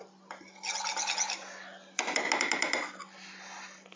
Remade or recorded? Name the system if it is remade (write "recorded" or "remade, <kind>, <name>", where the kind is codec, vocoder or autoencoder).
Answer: recorded